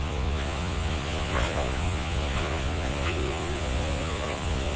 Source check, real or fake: fake